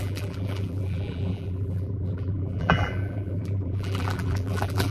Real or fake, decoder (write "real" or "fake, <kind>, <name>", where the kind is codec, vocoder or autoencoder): fake, vocoder, BigVGAN v2